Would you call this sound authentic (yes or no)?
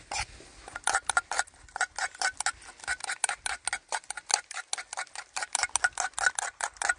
yes